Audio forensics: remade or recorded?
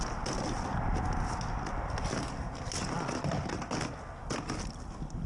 recorded